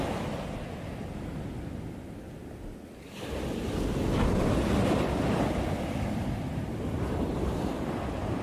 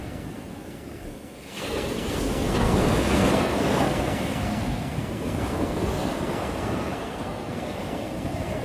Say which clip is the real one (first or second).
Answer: first